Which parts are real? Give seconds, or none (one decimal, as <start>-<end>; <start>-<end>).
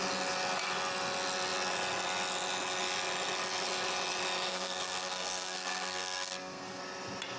0.0-4.5; 6.8-7.4